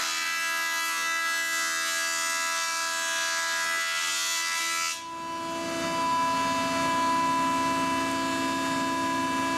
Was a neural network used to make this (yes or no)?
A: no